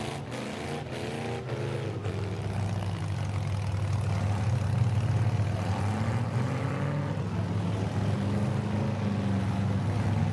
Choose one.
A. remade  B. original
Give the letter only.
B